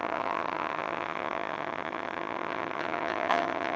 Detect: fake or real fake